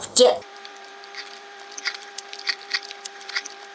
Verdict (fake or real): fake